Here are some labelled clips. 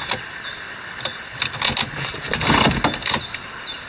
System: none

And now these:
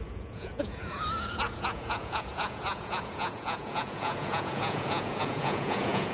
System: vocoder, Vocos